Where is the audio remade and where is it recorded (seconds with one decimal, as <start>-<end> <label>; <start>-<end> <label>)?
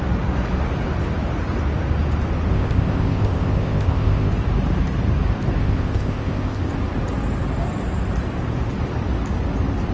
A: 0.0-2.5 recorded; 2.5-4.3 remade; 4.3-5.6 recorded; 5.6-6.7 remade; 6.7-9.9 recorded